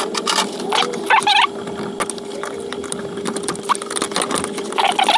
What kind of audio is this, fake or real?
real